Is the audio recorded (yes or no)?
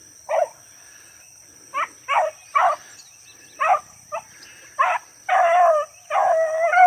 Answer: yes